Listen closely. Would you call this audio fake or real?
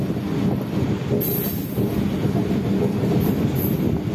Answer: real